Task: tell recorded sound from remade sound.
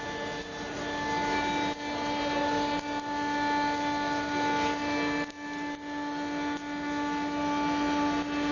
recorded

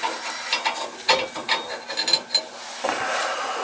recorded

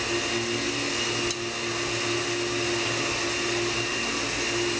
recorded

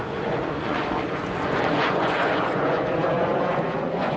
remade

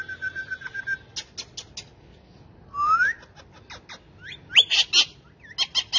recorded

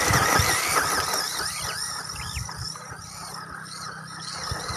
remade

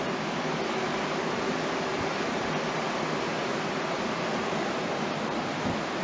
recorded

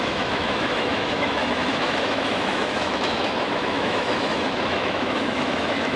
remade